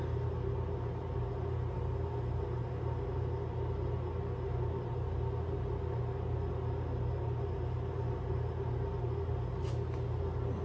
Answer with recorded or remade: recorded